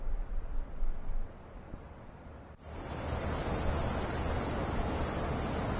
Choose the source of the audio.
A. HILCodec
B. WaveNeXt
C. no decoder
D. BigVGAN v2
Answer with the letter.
C